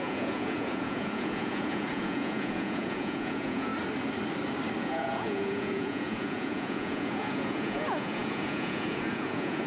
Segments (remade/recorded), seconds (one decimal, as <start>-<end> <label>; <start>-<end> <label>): 0.0-3.7 remade; 3.7-4.8 recorded; 4.8-9.7 remade